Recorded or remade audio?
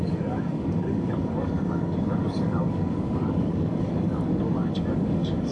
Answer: remade